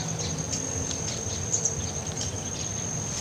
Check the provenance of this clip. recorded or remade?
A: recorded